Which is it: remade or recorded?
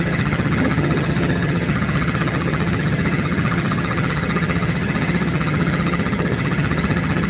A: remade